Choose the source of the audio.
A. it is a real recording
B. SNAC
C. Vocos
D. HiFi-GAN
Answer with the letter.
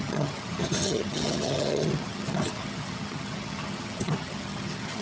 D